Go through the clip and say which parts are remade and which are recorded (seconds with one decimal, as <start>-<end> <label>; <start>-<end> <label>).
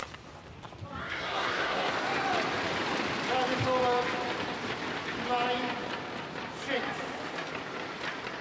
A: 0.0-1.0 recorded; 1.0-1.9 remade; 1.9-8.4 recorded